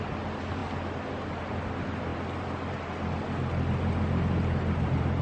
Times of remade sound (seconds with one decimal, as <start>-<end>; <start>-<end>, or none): none